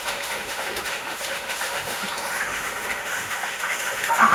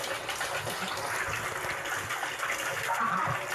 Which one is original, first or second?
second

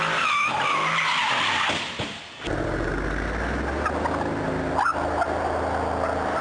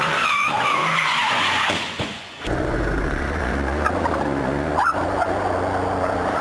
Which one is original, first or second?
first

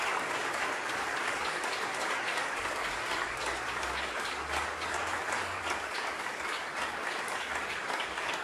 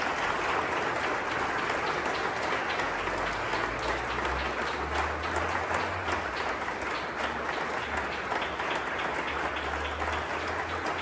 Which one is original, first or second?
second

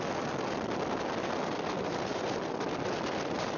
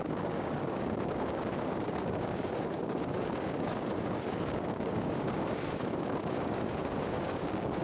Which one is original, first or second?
first